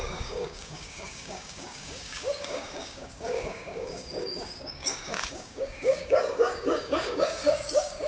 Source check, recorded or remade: remade